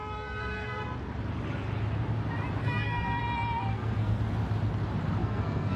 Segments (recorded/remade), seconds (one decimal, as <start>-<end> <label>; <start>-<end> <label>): 0.0-0.8 remade; 0.8-2.6 recorded; 2.6-3.2 remade; 3.2-3.7 recorded; 3.7-4.2 remade; 4.2-5.2 recorded; 5.2-5.8 remade